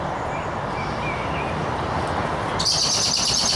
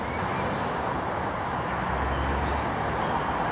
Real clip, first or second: second